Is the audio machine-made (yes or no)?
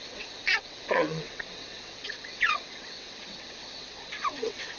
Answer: yes